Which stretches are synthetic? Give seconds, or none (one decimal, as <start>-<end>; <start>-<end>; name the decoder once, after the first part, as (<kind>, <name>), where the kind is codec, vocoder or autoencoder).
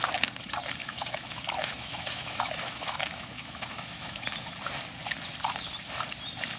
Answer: 0.8-4.5 (autoencoder, DAC-VAE)